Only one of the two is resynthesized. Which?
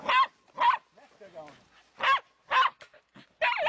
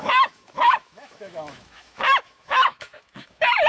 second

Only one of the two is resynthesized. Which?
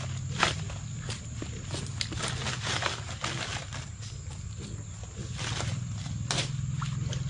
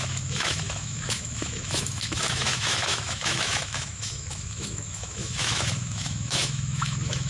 second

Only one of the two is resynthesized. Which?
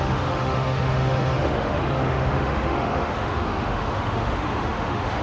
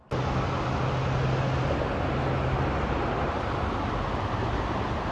first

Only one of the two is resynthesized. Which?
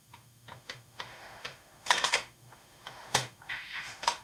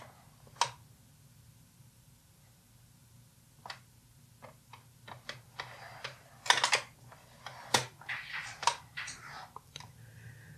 first